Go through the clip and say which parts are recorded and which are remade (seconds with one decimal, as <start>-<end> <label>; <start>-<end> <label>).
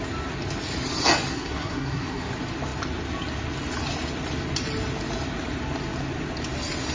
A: 0.0-1.3 recorded; 1.3-2.3 remade; 2.3-6.9 recorded